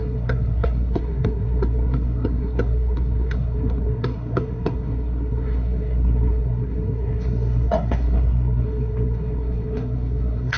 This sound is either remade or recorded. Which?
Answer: remade